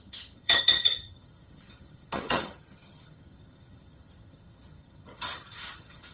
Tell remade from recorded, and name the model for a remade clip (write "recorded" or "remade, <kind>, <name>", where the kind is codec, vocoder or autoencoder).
remade, vocoder, HiFi-GAN